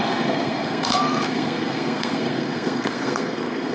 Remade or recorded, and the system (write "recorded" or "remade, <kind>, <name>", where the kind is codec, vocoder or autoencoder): remade, codec, SNAC